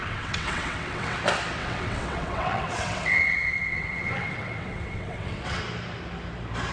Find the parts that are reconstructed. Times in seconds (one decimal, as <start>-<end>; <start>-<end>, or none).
0.0-1.2; 1.6-5.6